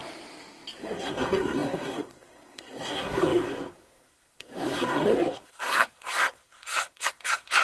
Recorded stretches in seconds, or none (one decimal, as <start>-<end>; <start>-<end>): 0.0-0.8